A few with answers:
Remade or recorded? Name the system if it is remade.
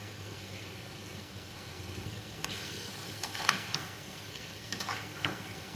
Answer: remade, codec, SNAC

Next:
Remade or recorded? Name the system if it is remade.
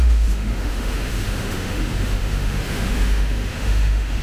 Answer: remade, autoencoder, DAC-VAE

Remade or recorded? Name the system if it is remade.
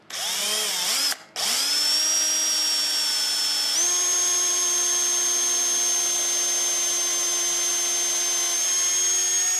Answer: recorded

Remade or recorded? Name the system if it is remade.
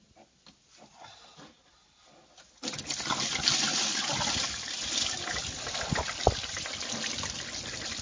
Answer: recorded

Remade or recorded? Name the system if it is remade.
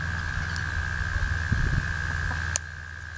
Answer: recorded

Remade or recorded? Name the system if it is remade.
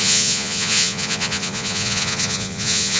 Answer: remade, vocoder, Vocos